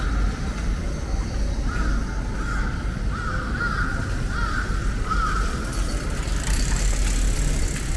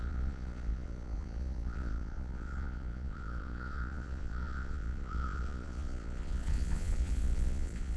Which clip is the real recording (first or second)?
first